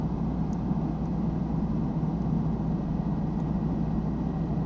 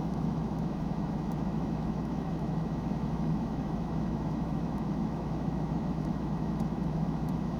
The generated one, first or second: second